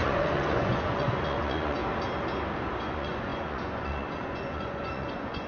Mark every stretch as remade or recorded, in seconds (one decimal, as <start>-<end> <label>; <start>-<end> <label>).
0.0-1.8 remade; 1.8-2.8 recorded; 2.8-5.5 remade